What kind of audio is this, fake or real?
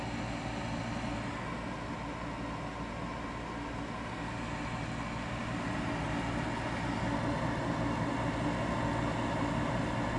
real